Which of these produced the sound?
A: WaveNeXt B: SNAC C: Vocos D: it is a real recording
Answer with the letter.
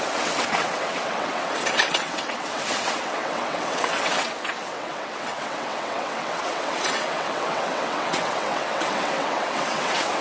A